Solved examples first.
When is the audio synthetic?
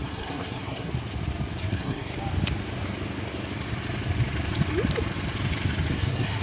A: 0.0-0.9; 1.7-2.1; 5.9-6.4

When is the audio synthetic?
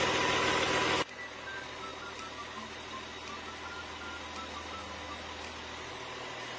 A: none